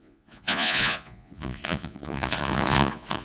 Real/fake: fake